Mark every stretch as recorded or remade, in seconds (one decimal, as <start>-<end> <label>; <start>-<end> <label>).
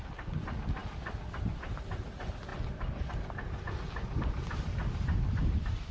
0.0-5.9 recorded